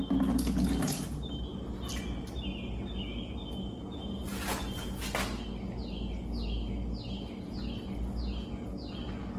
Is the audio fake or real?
real